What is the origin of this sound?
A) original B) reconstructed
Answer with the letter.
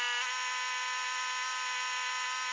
A